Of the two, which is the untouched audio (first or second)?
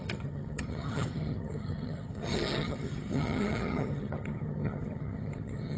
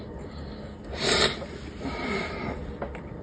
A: second